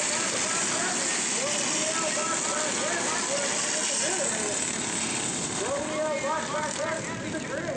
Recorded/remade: recorded